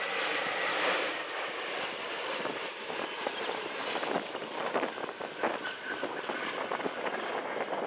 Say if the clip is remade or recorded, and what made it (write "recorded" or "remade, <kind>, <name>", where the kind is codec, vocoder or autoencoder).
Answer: remade, vocoder, BigVGAN v2